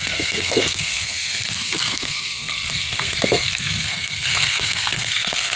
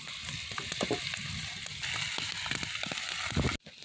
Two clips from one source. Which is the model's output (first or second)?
first